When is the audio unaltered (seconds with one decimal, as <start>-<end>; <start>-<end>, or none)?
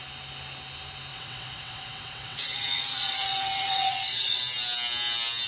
0.0-1.1; 4.4-5.5